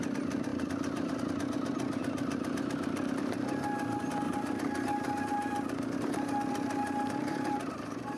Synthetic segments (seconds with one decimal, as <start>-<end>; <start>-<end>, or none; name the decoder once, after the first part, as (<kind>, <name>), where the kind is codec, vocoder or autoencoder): 7.2-8.2 (vocoder, BigVGAN v2)

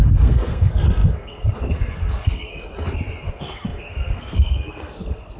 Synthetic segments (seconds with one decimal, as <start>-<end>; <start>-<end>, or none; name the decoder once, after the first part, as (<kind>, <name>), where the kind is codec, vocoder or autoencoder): 0.0-2.5 (codec, SNAC); 3.3-5.4